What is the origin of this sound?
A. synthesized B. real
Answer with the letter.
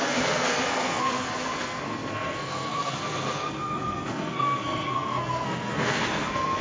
A